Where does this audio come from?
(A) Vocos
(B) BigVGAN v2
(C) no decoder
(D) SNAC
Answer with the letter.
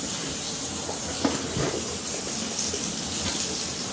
C